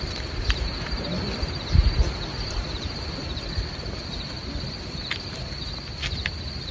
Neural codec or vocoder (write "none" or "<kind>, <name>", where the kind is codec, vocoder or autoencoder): none